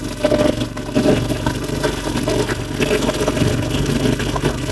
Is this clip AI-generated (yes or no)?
no